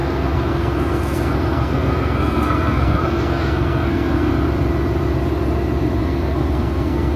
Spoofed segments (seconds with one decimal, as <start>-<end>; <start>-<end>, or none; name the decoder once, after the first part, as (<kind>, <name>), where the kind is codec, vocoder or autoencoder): 0.0-4.3 (codec, SNAC); 6.0-7.2